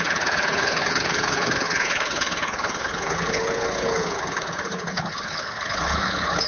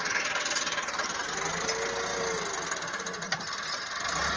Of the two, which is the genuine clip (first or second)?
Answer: second